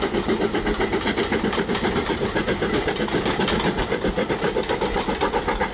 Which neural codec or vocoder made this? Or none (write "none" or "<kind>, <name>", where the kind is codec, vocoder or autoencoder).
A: none